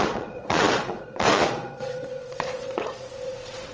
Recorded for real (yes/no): no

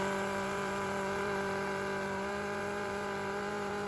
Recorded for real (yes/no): no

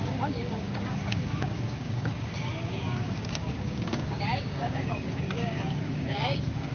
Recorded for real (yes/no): no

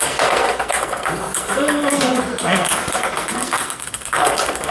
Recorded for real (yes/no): no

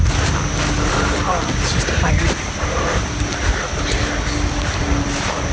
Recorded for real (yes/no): yes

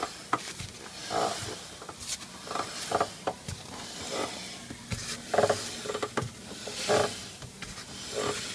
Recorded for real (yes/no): yes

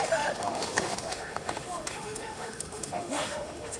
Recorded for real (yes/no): no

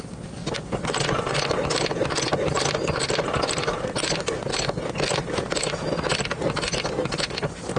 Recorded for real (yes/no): yes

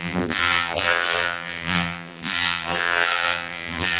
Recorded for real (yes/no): no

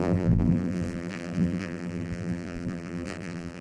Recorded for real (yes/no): no